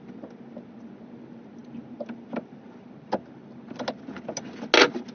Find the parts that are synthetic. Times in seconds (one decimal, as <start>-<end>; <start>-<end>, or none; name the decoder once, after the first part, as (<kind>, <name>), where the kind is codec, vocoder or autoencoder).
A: none